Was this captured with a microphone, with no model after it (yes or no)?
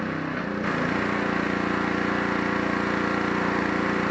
yes